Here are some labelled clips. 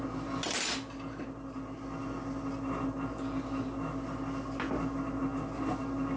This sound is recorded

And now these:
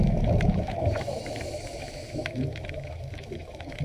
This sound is remade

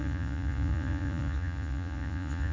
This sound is remade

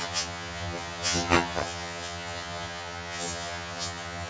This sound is remade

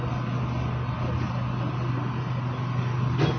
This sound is recorded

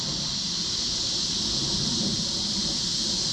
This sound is recorded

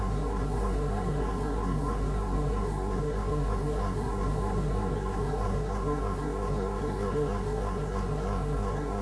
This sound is remade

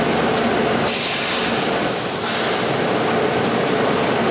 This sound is recorded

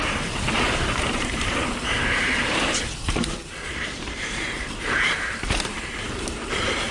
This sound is remade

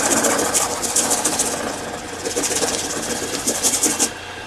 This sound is recorded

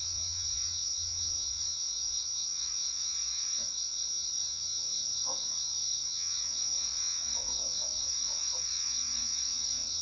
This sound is remade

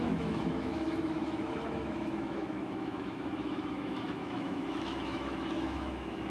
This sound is remade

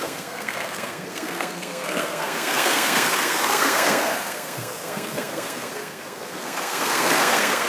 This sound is remade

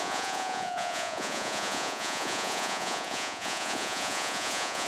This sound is remade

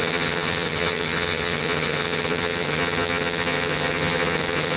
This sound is remade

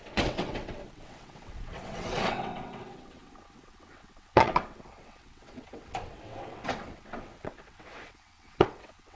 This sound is remade